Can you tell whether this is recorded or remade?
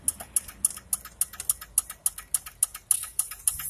recorded